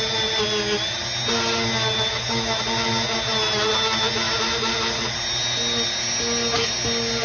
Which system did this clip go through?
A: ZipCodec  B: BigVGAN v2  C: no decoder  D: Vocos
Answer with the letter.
C